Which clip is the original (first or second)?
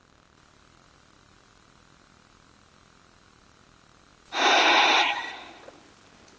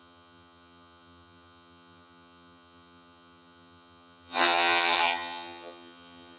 first